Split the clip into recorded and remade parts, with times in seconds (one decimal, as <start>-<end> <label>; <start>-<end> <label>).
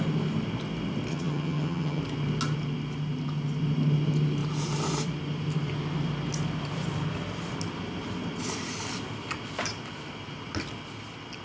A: 0.0-1.1 recorded; 1.1-2.0 remade; 2.0-11.4 recorded